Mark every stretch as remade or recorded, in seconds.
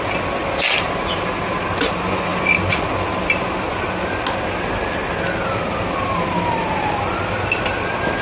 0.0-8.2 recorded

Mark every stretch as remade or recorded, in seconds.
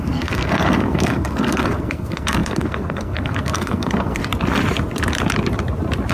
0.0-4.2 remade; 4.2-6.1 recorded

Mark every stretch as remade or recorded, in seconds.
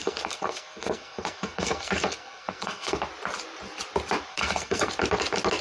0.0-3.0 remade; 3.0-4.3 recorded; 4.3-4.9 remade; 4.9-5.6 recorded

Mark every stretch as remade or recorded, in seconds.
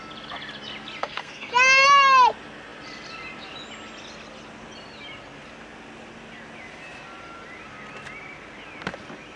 0.0-1.0 recorded; 1.0-1.5 remade; 1.5-9.4 recorded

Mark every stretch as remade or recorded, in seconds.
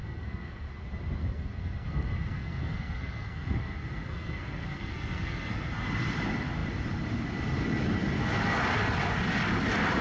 0.0-0.7 remade; 0.7-1.2 recorded; 1.2-5.7 remade; 5.7-10.0 recorded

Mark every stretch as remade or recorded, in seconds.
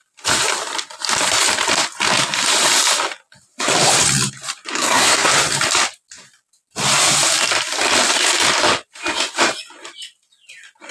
0.0-4.7 recorded; 4.7-5.3 remade; 5.3-10.9 recorded